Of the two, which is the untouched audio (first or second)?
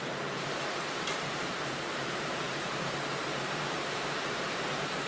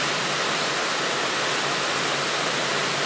second